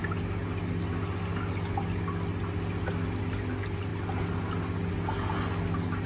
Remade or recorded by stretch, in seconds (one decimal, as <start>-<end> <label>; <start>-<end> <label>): 0.0-6.1 recorded